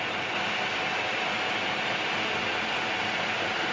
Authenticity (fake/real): real